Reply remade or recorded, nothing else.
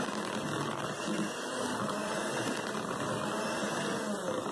recorded